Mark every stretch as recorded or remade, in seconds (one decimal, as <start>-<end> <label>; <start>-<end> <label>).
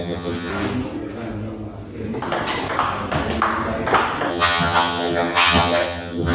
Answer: 0.0-0.5 remade; 0.5-4.3 recorded; 4.3-6.3 remade